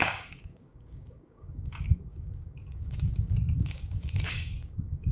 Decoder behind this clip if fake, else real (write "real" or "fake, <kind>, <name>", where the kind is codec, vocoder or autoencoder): fake, codec, DAC